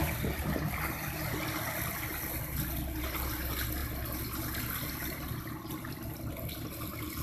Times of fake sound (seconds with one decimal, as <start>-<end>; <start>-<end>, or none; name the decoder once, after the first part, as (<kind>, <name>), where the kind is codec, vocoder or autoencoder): none